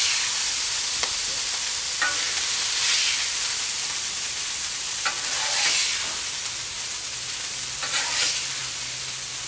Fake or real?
fake